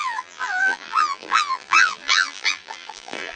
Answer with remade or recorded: remade